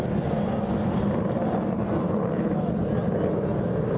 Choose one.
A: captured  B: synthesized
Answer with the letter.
A